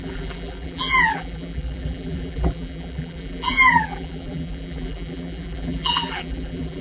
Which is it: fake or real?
fake